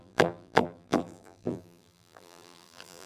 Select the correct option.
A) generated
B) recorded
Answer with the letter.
A